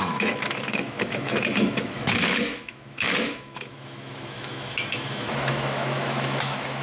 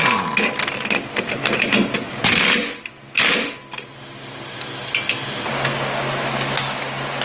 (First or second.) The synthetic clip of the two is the first